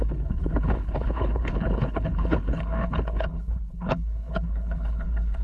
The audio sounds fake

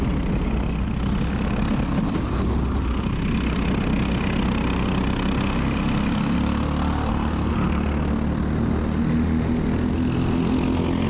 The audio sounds real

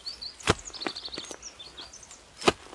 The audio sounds real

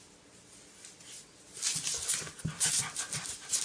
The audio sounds real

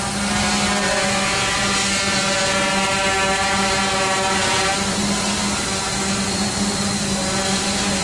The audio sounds real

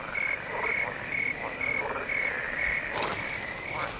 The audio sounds real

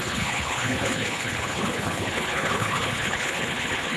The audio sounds fake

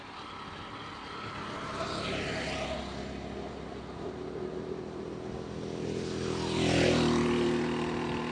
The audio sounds real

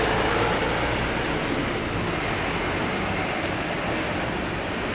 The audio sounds real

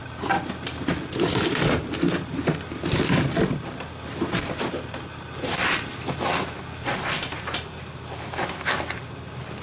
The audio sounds real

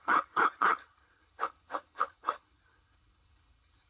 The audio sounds fake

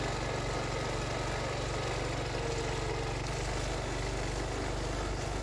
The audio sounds real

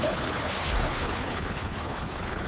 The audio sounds fake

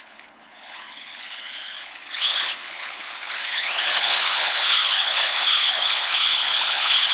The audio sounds fake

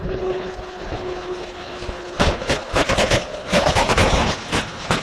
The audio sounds fake